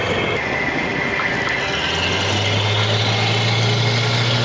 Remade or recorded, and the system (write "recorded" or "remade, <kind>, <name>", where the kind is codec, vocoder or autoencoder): recorded